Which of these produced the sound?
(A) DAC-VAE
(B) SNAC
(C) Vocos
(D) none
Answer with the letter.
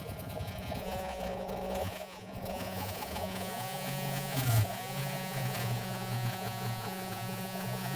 C